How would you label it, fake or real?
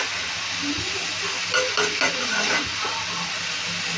real